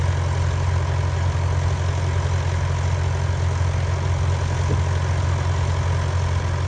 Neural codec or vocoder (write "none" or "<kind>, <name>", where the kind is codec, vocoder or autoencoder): none